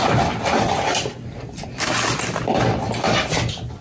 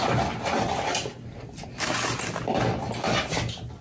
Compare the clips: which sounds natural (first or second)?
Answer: second